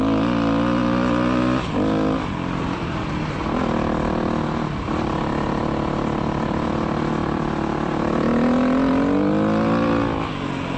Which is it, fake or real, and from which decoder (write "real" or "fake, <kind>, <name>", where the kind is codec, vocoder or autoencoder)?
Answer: real